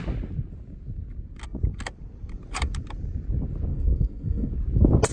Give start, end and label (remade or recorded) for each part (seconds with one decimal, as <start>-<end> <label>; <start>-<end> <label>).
0.0-3.7 recorded; 3.7-4.5 remade; 4.5-5.1 recorded